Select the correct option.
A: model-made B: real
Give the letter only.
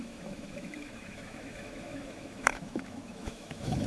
A